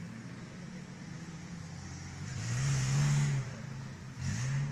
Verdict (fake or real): real